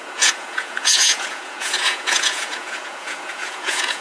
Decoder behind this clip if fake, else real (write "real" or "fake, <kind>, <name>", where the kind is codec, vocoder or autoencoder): fake, vocoder, Vocos